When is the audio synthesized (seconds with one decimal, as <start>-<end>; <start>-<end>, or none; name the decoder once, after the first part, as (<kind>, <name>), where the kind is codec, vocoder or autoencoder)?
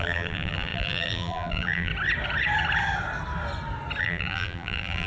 0.0-1.9 (vocoder, BigVGAN v2); 4.0-5.1